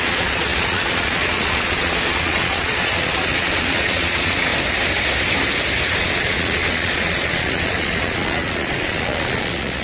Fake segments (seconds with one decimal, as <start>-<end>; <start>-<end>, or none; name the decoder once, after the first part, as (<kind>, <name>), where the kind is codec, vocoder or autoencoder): 0.0-4.5 (vocoder, Vocos); 6.0-9.8